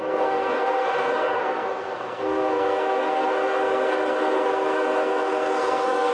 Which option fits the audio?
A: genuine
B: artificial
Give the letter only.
B